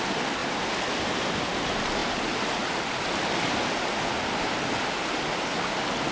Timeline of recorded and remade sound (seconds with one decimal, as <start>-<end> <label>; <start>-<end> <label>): 0.0-6.1 recorded